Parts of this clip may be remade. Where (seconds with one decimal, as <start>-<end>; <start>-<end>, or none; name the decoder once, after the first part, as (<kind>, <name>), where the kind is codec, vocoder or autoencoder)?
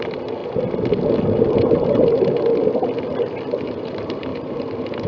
0.0-0.4 (vocoder, BigVGAN v2); 3.5-5.1